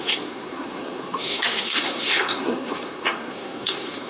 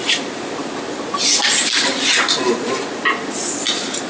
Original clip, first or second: second